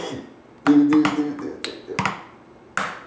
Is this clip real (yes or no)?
yes